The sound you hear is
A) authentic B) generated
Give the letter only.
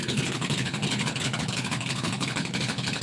B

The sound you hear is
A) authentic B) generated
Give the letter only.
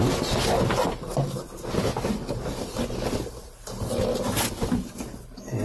A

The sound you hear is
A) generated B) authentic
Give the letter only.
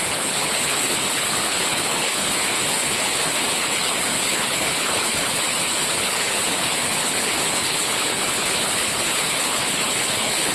A